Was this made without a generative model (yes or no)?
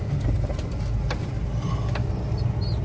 yes